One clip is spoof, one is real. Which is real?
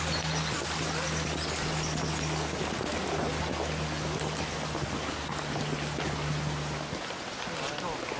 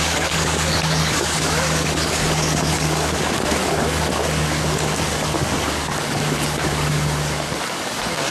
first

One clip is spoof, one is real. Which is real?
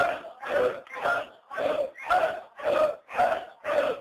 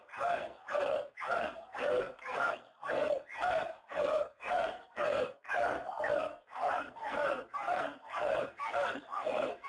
first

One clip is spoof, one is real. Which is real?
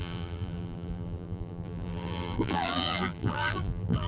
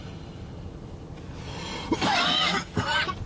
second